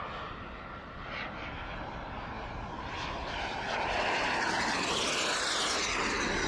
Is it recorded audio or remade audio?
recorded